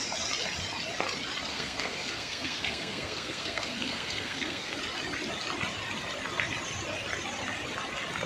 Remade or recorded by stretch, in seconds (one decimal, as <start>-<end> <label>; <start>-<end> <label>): 0.0-1.5 recorded; 1.5-4.8 remade; 4.8-8.3 recorded